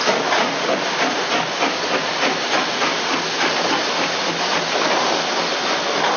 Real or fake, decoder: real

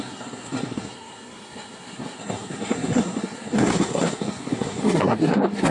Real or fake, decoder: fake, codec, SNAC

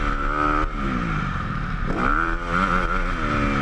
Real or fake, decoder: real